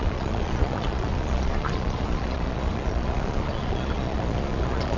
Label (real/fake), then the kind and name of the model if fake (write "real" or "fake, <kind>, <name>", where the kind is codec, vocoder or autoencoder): fake, vocoder, Vocos